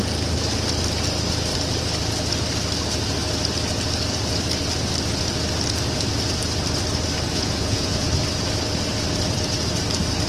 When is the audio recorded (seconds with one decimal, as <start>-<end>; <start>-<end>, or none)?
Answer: 0.0-7.3; 8.1-10.3